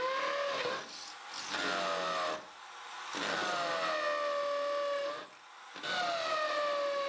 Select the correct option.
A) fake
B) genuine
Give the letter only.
B